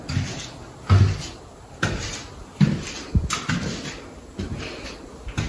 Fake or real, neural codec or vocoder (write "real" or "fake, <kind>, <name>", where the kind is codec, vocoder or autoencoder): real